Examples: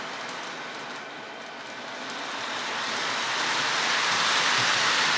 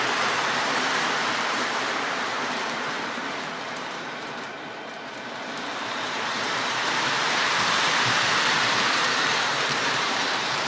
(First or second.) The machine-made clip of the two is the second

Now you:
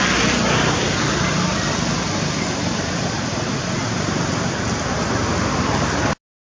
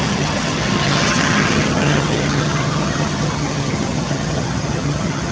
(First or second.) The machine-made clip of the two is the second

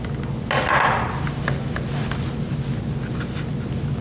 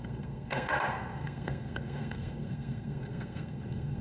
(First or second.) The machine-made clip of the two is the second